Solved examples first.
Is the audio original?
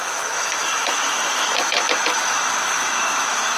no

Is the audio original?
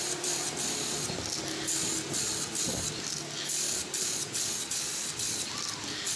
yes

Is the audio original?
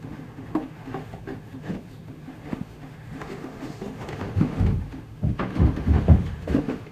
no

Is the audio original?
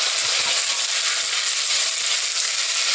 yes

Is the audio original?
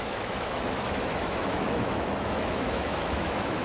no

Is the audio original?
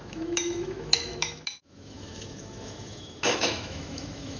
no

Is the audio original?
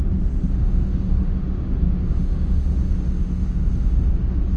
no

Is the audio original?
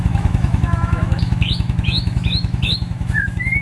no